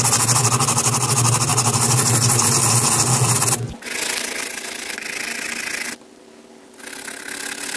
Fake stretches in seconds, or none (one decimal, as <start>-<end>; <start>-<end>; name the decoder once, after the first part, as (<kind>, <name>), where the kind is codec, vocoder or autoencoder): none